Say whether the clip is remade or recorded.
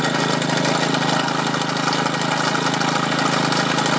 recorded